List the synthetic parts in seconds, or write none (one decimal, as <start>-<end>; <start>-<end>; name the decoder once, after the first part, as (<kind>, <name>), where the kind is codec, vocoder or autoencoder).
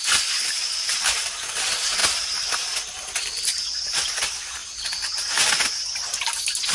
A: none